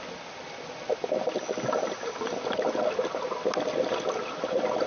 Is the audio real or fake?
real